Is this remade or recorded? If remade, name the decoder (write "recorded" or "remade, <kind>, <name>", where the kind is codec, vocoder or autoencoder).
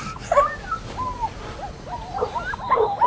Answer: recorded